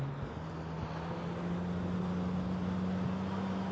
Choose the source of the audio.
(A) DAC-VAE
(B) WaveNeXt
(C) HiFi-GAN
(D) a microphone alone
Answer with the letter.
D